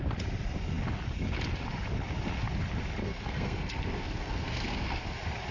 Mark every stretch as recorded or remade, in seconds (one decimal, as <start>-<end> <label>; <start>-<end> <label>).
0.0-3.0 recorded; 3.0-5.0 remade; 5.0-5.5 recorded